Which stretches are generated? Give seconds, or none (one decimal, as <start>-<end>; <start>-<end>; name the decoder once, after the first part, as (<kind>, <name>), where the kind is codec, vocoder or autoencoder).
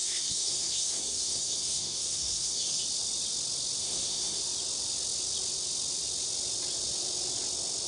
0.0-2.8 (codec, SNAC); 3.8-4.4